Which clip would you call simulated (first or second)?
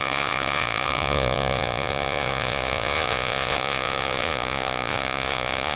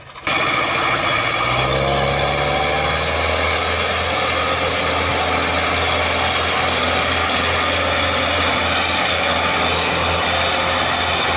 first